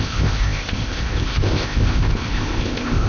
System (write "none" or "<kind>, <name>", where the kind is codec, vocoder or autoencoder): codec, ZipCodec